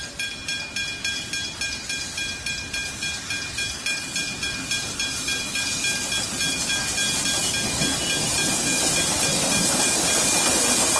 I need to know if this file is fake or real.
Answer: real